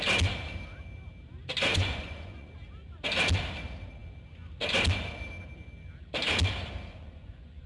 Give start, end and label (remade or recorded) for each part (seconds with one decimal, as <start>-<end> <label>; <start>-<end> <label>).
0.0-1.7 recorded; 1.7-2.5 remade; 2.5-6.9 recorded; 6.9-7.7 remade